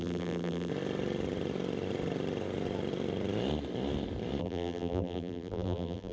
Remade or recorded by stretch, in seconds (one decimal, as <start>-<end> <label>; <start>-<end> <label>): 0.0-0.7 remade; 0.7-4.4 recorded; 4.4-6.1 remade